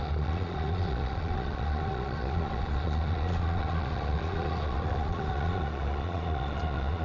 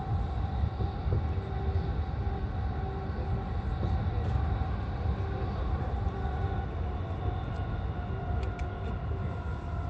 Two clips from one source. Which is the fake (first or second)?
first